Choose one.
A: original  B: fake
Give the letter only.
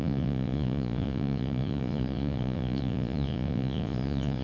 B